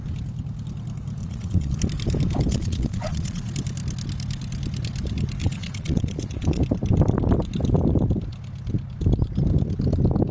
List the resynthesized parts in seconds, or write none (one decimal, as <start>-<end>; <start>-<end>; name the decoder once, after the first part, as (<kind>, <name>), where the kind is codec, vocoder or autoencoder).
1.2-1.8 (vocoder, Vocos); 2.5-3.5; 5.4-6.6